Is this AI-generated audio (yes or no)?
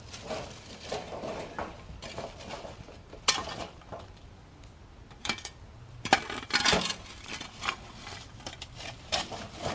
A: yes